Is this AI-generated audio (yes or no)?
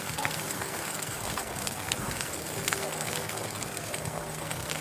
yes